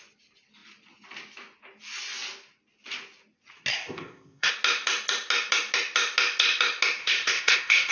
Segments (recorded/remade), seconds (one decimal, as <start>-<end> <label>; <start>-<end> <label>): 0.0-3.7 recorded; 3.7-4.5 remade; 4.5-7.0 recorded; 7.0-7.9 remade